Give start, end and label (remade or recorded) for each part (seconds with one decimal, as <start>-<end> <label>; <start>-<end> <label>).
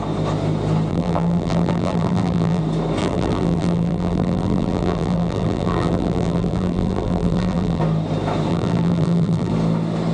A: 0.0-0.9 recorded; 0.9-2.6 remade; 2.6-3.0 recorded; 3.0-7.8 remade; 7.8-8.5 recorded; 8.5-9.5 remade; 9.5-10.1 recorded